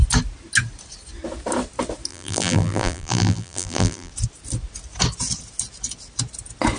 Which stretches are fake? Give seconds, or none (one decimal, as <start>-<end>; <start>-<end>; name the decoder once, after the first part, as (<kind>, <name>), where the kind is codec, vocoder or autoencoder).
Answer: 2.1-4.1 (vocoder, BigVGAN v2)

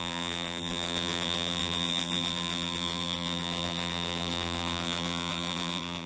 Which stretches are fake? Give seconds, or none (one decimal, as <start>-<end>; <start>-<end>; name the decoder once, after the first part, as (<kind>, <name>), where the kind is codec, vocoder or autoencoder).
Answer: 0.0-6.1 (vocoder, BigVGAN v2)

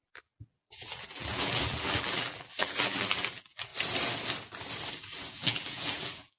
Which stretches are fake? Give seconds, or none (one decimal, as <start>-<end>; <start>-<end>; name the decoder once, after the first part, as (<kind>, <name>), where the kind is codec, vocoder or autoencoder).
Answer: 0.0-3.7 (vocoder, BigVGAN v2); 4.9-6.4

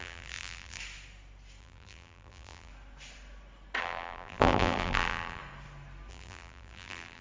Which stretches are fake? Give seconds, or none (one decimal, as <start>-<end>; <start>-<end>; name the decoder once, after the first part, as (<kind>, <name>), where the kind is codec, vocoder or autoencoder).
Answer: 0.0-0.8 (vocoder, BigVGAN v2); 1.6-2.7; 3.8-5.4; 6.1-7.2

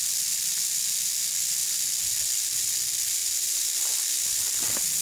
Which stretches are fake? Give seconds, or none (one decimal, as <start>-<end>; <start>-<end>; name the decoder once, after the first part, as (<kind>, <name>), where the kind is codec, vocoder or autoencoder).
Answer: 3.2-4.4 (vocoder, BigVGAN v2)

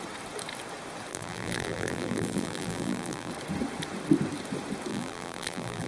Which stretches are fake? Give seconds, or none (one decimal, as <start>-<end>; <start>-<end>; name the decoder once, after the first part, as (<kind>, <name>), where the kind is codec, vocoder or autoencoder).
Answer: 1.1-3.3 (vocoder, BigVGAN v2); 4.9-5.9

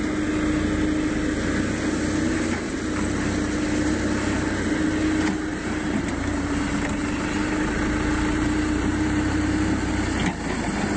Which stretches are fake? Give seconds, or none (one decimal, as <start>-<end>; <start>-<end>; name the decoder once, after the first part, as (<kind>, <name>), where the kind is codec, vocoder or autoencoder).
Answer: 5.5-9.9 (vocoder, BigVGAN v2)